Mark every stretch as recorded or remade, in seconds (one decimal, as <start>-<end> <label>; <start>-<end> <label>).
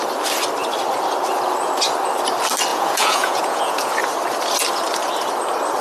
0.0-2.7 recorded; 2.7-3.9 remade; 3.9-5.8 recorded